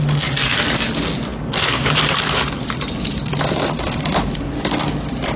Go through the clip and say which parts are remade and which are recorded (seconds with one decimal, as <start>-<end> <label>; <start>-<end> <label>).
0.0-1.3 recorded; 1.3-4.5 remade; 4.5-5.4 recorded